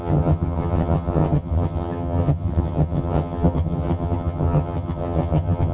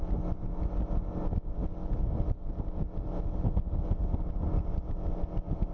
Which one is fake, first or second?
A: first